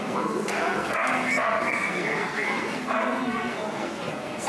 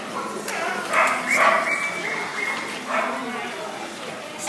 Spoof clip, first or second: first